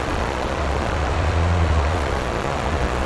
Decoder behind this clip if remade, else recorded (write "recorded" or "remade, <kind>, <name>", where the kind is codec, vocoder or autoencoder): remade, vocoder, Vocos